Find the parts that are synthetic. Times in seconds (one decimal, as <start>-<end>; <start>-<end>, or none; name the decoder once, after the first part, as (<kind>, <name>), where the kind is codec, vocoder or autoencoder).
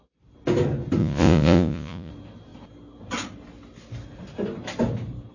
1.0-2.1 (vocoder, Vocos)